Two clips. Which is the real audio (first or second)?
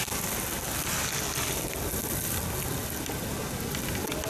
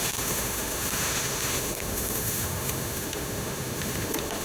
first